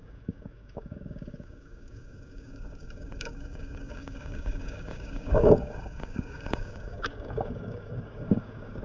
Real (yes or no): no